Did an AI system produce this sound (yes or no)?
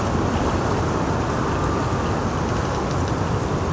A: no